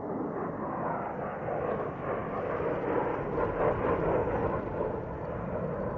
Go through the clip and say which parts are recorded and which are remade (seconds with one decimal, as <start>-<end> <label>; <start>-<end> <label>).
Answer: 0.0-6.0 recorded